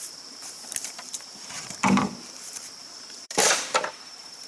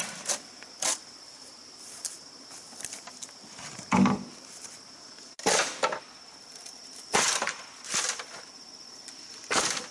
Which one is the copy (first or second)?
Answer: first